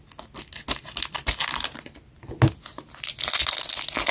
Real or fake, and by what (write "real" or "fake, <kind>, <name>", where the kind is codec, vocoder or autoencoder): real